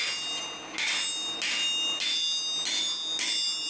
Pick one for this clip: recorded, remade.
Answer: recorded